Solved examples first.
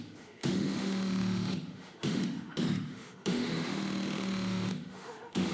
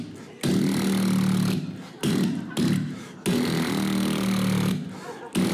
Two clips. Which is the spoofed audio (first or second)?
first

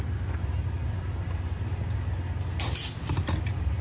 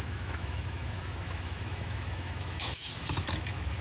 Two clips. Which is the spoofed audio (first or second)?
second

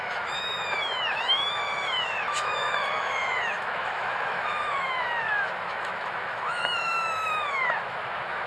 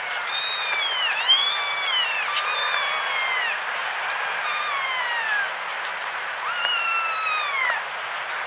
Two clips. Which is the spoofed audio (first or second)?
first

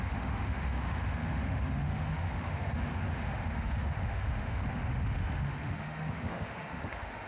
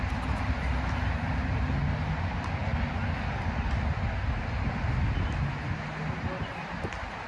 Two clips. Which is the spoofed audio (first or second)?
first